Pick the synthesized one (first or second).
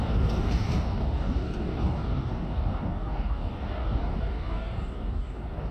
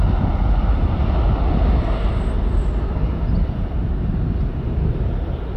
first